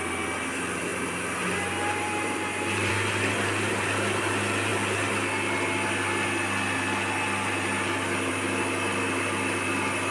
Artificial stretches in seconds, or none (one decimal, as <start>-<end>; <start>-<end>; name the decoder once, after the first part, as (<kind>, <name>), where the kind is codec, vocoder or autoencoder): 0.9-1.4 (vocoder, BigVGAN v2); 1.9-2.9